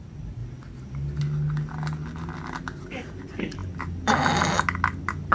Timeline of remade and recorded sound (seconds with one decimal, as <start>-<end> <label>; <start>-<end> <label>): 0.0-5.3 recorded